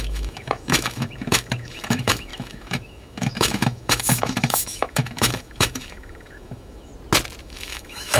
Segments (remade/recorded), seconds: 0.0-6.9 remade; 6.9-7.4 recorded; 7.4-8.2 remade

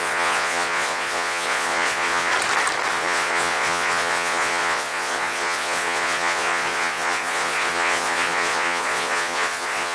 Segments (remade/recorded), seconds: 0.0-2.3 remade; 2.3-2.9 recorded; 2.9-9.9 remade

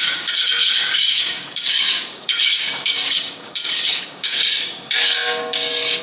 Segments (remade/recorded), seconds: 0.0-6.0 remade

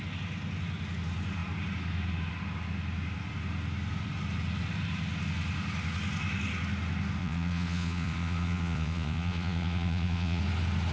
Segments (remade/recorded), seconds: 0.0-7.2 recorded; 7.2-10.4 remade; 10.4-10.9 recorded

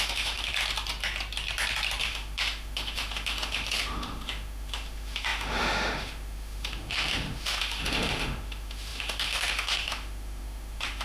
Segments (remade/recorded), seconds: 0.0-0.5 remade; 0.5-2.0 recorded; 2.0-11.0 remade